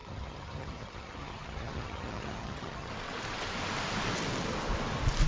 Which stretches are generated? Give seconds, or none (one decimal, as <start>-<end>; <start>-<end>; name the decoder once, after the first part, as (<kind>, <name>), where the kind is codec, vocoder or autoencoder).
0.0-2.9 (vocoder, HiFi-GAN)